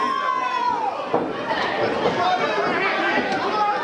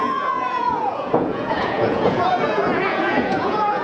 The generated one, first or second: second